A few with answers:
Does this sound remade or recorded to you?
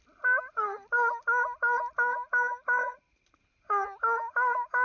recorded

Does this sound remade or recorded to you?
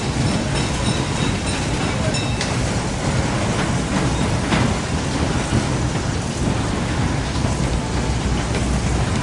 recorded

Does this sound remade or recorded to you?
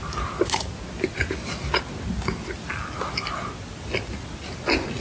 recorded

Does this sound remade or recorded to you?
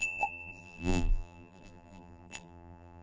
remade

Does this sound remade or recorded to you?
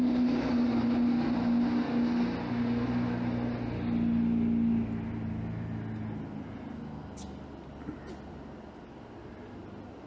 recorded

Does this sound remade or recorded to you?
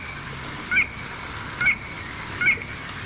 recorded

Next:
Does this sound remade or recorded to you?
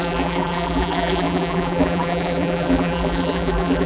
remade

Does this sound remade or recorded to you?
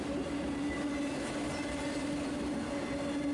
recorded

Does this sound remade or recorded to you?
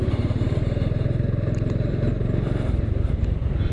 remade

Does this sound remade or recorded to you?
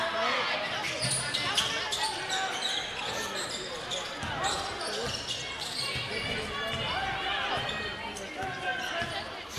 recorded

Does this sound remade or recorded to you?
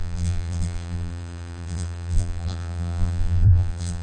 remade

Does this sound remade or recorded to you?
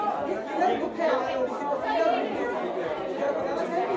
recorded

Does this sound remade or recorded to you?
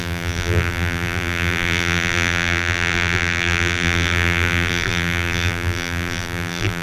remade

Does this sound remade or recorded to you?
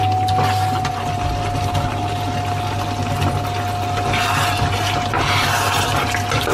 recorded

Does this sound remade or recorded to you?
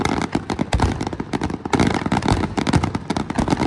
recorded